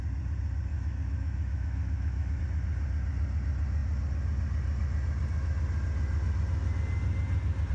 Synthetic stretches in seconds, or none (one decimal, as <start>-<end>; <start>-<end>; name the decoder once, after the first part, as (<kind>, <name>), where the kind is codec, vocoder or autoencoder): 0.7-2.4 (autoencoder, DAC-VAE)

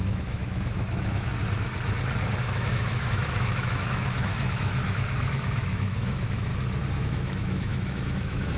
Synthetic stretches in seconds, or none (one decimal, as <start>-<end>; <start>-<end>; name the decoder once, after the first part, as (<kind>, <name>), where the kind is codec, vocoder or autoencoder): 0.0-1.3 (autoencoder, DAC-VAE); 2.4-6.5; 7.0-8.6

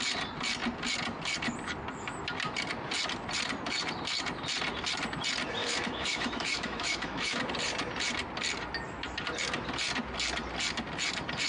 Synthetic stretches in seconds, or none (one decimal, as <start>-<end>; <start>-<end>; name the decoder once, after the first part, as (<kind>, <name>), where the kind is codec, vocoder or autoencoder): 5.6-7.4 (autoencoder, DAC-VAE)